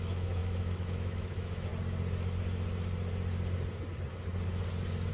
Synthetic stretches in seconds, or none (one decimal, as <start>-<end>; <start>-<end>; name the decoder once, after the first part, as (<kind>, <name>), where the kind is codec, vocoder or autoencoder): 0.0-1.7 (autoencoder, DAC-VAE)